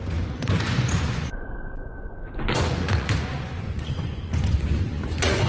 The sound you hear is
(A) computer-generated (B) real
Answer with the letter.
A